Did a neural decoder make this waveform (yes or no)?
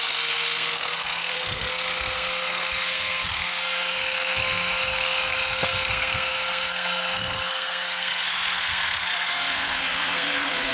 yes